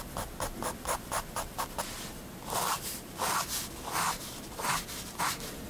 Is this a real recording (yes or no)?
yes